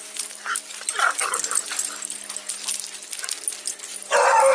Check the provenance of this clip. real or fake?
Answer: real